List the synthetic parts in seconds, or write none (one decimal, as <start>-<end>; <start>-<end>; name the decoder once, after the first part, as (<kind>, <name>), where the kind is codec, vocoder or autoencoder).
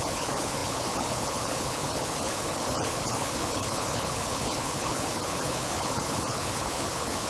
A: 0.0-7.3 (codec, HILCodec)